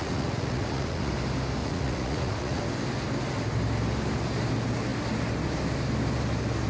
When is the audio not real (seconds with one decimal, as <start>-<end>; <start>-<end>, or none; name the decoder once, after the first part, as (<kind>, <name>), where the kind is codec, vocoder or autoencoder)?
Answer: 0.0-1.1 (vocoder, Vocos); 1.6-2.6